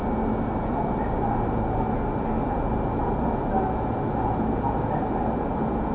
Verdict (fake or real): real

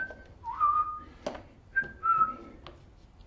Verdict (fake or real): real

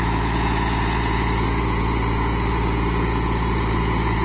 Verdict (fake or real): fake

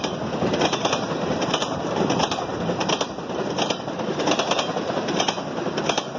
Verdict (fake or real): real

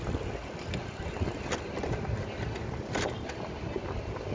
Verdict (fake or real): real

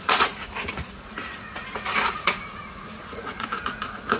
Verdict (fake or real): fake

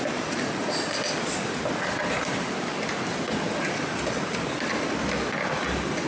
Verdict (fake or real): real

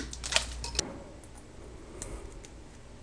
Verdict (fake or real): real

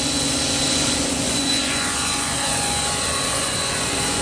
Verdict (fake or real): fake